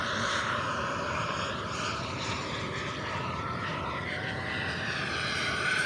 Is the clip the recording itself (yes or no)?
no